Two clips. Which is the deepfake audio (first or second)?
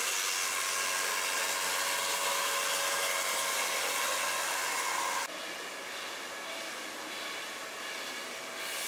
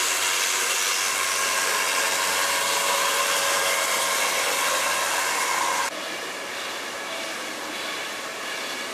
second